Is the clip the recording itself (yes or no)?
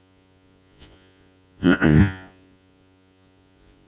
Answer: no